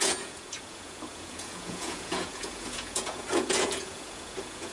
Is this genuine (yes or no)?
no